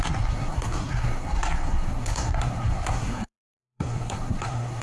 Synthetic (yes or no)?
yes